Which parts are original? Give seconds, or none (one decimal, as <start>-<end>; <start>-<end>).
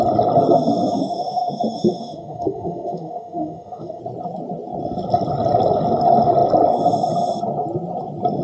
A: 0.0-1.0; 4.0-8.4